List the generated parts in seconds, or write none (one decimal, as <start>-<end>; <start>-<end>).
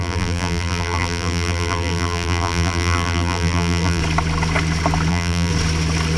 0.0-4.0; 5.1-5.5